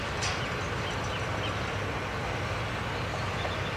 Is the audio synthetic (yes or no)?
no